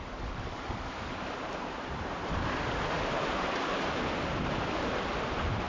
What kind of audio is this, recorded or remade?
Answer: recorded